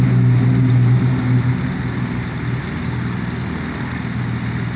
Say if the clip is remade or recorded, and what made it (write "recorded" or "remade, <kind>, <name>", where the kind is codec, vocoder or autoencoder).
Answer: recorded